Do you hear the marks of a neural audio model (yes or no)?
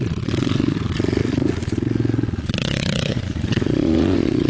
yes